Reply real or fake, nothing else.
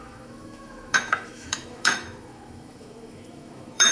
fake